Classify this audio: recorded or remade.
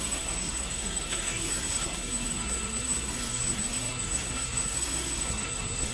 remade